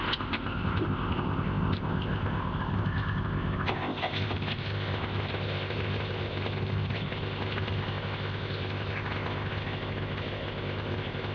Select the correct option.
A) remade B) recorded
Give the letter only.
A